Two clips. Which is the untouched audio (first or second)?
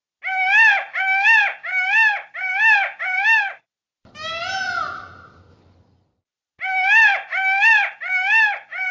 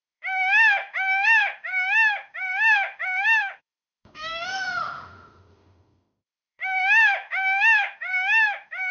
first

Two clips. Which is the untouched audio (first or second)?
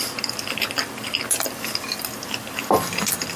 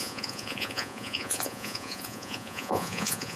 first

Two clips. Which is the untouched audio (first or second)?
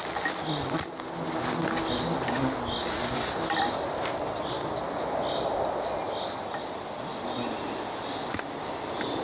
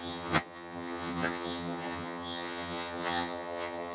first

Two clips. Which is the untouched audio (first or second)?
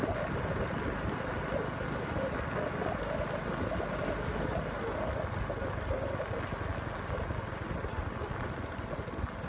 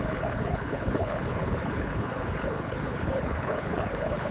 first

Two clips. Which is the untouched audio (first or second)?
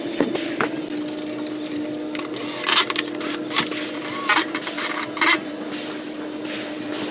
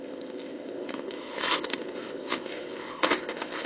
first